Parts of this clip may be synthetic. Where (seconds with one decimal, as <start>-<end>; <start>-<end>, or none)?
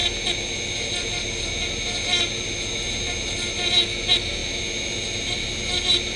none